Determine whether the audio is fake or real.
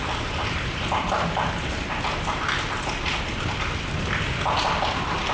real